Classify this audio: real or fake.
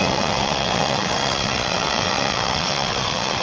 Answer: fake